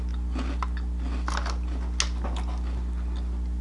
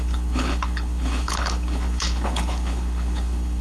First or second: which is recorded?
first